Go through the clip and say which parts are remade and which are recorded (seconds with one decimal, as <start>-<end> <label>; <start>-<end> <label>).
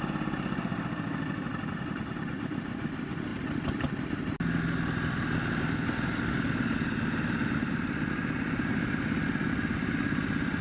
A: 0.0-10.6 recorded